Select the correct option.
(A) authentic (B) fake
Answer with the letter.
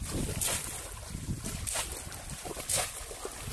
A